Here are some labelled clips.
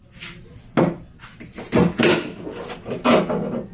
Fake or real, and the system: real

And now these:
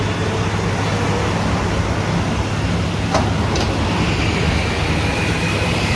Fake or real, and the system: real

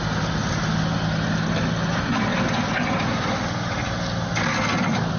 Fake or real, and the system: real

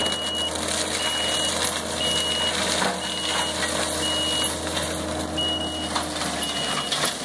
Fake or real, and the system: real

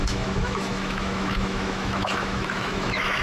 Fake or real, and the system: fake, autoencoder, DAC-VAE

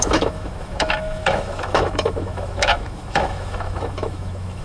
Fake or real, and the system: fake, autoencoder, DAC-VAE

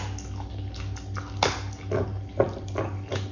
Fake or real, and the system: real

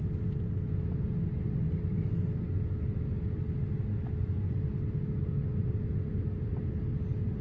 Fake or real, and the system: real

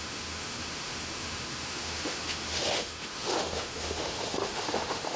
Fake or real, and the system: fake, autoencoder, DAC-VAE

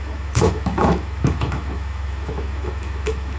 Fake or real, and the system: fake, autoencoder, DAC-VAE